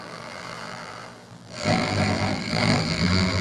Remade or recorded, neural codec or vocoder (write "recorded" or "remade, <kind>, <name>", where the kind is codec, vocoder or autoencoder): remade, vocoder, BigVGAN v2